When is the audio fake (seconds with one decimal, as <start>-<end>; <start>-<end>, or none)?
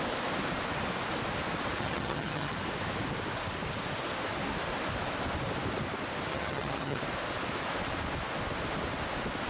1.8-2.6; 6.3-7.0